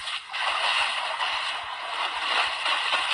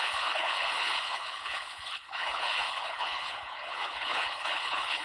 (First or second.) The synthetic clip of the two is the second